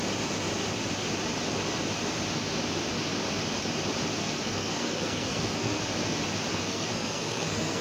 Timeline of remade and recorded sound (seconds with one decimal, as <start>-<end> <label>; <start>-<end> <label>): 0.0-4.2 recorded; 4.2-5.8 remade; 5.8-6.5 recorded; 6.5-7.8 remade